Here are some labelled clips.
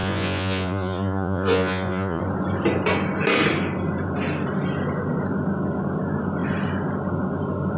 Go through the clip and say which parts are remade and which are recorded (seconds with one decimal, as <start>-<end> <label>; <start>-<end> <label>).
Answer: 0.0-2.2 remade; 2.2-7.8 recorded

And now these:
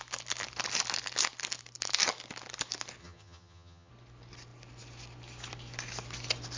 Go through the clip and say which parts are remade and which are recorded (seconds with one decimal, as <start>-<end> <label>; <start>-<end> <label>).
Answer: 0.0-3.0 recorded; 3.0-3.9 remade; 3.9-6.6 recorded

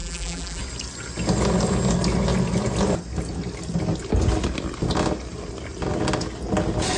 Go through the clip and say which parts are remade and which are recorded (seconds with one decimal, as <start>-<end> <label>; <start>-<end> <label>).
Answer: 0.0-0.6 remade; 0.6-7.0 recorded

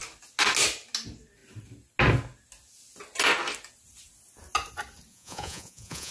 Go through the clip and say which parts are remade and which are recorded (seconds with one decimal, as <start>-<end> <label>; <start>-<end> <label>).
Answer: 0.0-5.1 recorded; 5.1-6.1 remade

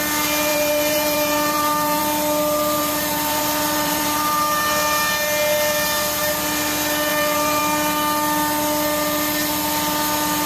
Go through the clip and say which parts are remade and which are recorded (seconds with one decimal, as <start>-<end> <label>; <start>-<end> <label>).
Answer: 0.0-0.5 recorded; 0.5-2.0 remade; 2.0-2.8 recorded; 2.8-4.3 remade; 4.3-7.1 recorded; 7.1-7.6 remade; 7.6-10.5 recorded

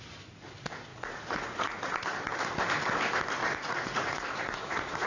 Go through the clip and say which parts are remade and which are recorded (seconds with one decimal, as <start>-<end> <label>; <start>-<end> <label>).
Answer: 0.0-0.9 recorded; 0.9-1.9 remade; 1.9-3.4 recorded; 3.4-5.1 remade

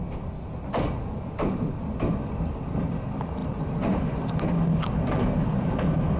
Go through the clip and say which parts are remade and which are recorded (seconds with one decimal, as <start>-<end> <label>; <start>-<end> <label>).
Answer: 0.0-3.4 recorded; 3.4-4.4 remade; 4.4-6.2 recorded